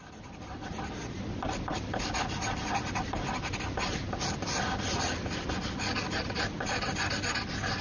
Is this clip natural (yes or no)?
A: yes